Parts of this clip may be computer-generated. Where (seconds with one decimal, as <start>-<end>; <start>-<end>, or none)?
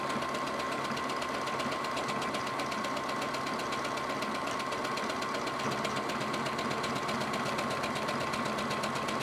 none